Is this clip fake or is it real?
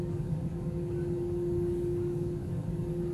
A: fake